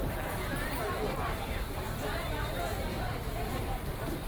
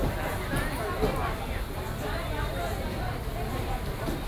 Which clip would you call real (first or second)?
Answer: second